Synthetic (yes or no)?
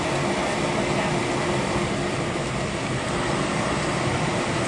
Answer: no